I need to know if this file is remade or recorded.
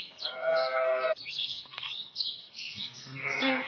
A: remade